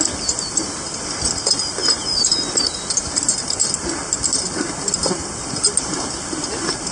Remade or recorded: recorded